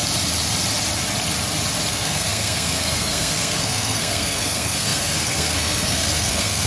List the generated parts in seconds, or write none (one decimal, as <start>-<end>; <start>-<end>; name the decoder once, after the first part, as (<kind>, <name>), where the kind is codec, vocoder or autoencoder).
1.9-6.7 (codec, SNAC)